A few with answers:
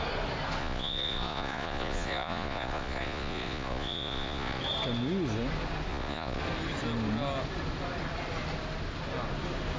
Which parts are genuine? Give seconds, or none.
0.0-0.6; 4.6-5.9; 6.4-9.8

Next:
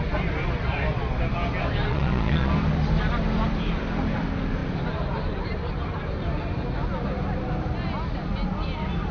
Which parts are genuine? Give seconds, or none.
0.0-1.9; 2.5-9.1

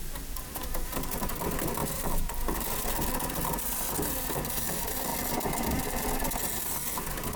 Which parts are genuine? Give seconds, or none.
0.0-7.4

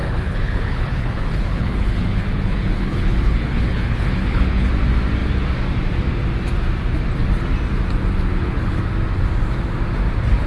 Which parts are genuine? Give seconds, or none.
4.7-8.3; 8.8-10.5

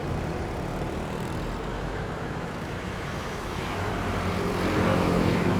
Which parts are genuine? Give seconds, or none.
0.0-1.7; 3.9-4.9

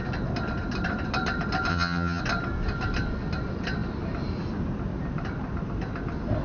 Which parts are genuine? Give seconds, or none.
0.0-1.7; 2.2-6.4

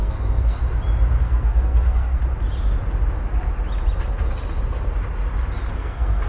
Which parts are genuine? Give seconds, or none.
0.6-1.2; 2.2-5.7

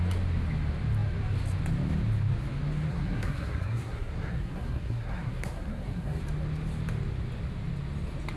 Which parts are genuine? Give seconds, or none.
0.0-2.9; 6.2-8.4